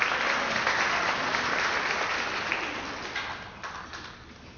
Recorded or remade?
recorded